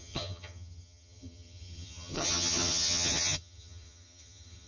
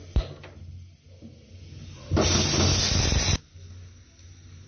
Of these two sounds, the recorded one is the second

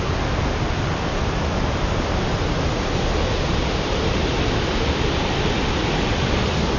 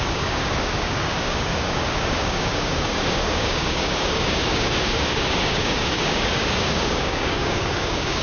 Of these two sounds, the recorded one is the first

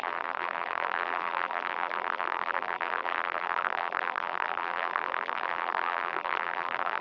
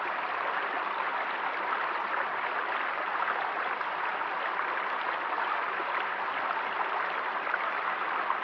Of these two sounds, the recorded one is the second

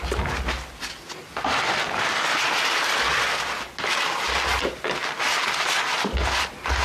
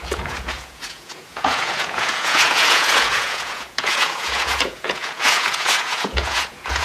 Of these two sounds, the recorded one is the first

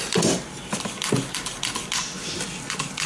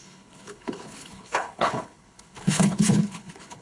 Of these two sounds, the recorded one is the first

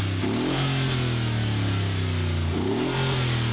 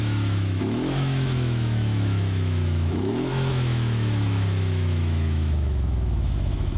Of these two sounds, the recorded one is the first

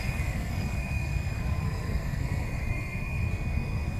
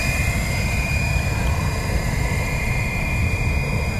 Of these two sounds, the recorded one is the second